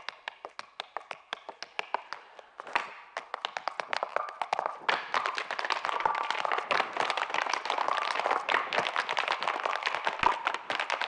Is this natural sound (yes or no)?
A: yes